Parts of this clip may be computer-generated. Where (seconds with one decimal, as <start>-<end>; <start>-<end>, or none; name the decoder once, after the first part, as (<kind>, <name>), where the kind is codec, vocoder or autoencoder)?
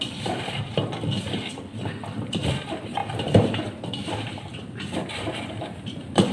0.0-0.8 (vocoder, BigVGAN v2); 2.3-6.3